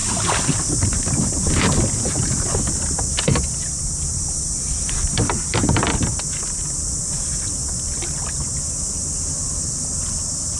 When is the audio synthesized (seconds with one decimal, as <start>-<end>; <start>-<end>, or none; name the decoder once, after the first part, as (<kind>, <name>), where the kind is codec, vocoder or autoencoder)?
0.0-7.6 (vocoder, BigVGAN v2); 8.8-10.6